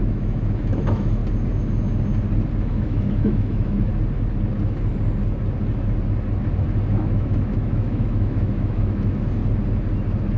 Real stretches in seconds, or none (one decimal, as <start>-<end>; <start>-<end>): 1.2-2.6; 3.9-6.9; 9.4-10.4